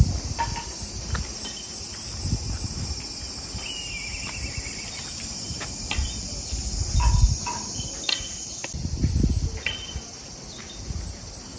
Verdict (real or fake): real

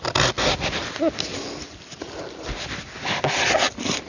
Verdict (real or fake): real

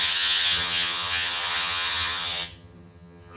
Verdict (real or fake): fake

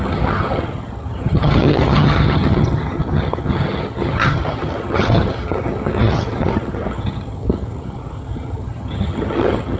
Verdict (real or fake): fake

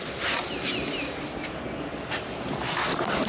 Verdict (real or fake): real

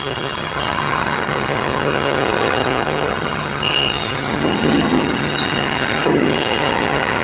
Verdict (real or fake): fake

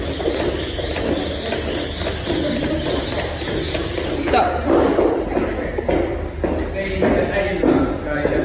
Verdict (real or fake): real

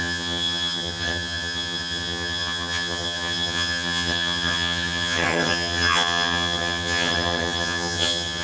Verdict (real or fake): fake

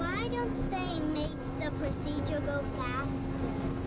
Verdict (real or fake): real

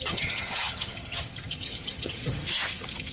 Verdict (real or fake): fake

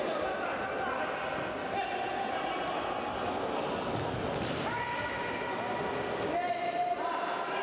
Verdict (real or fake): real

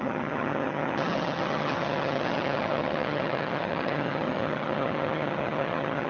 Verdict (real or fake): fake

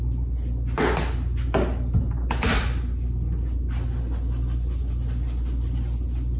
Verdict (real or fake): real